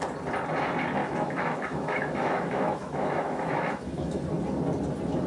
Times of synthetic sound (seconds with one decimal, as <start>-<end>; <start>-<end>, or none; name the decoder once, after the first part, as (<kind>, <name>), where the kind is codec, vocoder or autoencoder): 1.0-4.2 (autoencoder, DAC-VAE)